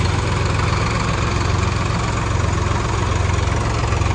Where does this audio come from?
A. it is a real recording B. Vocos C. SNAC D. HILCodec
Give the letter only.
A